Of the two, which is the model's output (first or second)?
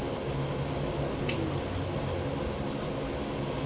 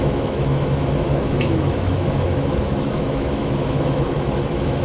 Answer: second